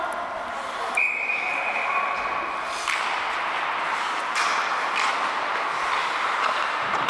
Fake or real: real